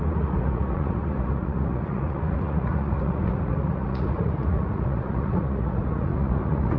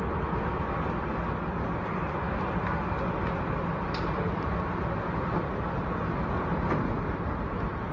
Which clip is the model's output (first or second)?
first